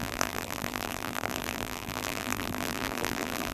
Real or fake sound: fake